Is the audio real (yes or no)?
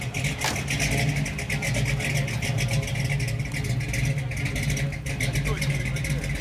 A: yes